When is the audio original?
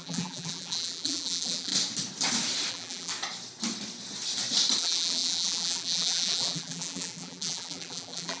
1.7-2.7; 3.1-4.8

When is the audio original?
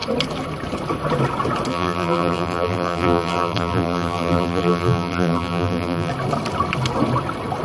0.0-1.7; 6.1-7.6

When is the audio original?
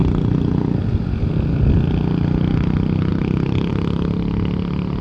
0.0-3.1; 3.7-5.0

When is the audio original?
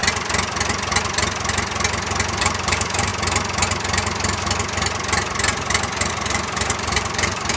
0.0-2.4; 3.1-6.1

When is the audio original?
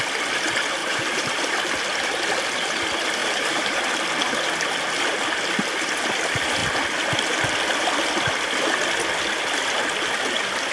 0.0-0.8; 1.4-3.2; 3.9-10.7